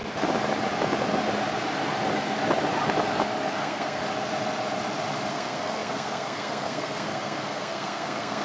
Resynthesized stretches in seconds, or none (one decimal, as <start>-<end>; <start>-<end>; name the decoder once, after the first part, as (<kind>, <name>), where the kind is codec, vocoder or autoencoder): 3.5-4.0 (codec, SNAC); 5.3-8.4